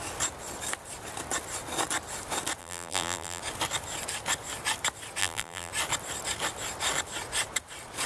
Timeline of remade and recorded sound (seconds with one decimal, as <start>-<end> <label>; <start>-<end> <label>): 0.0-2.6 recorded; 2.6-3.4 remade; 3.4-5.2 recorded; 5.2-5.7 remade; 5.7-8.1 recorded